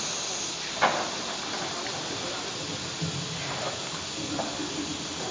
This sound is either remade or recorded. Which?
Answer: recorded